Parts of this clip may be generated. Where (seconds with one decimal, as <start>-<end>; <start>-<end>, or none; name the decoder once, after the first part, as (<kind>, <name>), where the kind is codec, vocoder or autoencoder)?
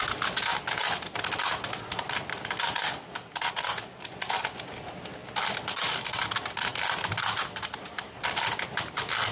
none